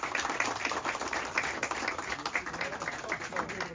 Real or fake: real